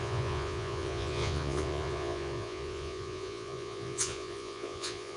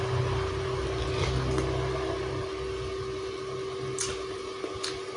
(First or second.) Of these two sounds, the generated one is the first